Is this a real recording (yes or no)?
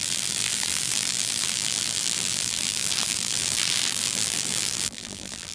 no